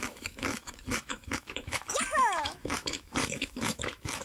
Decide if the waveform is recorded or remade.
remade